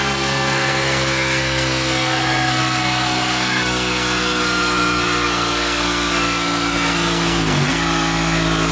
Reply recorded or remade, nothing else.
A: remade